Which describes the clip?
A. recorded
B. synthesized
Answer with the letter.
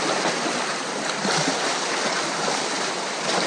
A